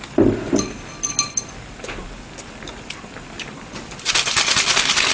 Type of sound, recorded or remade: recorded